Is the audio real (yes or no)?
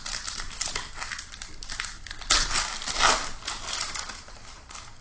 yes